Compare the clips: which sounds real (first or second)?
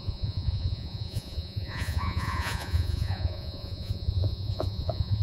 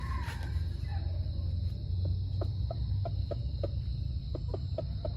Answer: second